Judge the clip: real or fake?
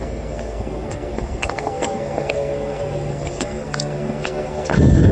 fake